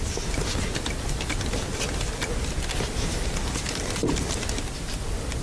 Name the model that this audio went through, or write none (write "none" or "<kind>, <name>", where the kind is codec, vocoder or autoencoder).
none